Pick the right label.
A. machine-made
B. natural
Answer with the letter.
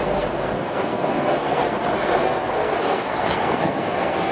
A